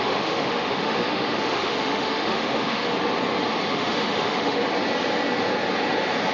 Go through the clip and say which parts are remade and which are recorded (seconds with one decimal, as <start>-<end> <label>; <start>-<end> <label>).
0.0-2.8 remade; 2.8-3.7 recorded; 3.7-4.6 remade; 4.6-6.3 recorded